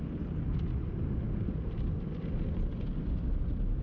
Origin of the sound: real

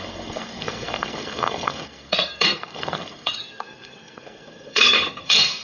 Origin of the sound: fake